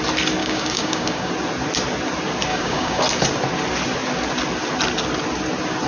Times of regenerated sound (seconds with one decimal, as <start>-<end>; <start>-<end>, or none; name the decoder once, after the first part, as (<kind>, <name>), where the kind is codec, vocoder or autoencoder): 0.4-1.3 (codec, DAC); 2.5-3.0